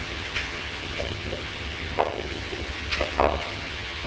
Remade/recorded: remade